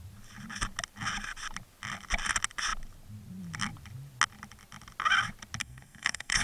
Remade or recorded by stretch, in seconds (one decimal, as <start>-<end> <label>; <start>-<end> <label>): 0.0-5.6 recorded; 5.6-6.4 remade